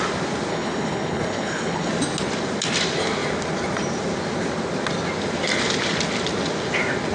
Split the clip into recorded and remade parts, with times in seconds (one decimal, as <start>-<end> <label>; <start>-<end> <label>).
0.0-0.5 recorded; 0.5-1.9 remade; 1.9-7.1 recorded